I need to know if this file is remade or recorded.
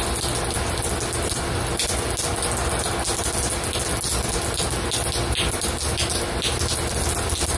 recorded